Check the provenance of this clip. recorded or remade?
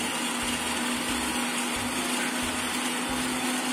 recorded